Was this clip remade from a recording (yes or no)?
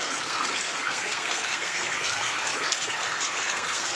yes